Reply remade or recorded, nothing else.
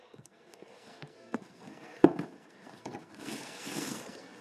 remade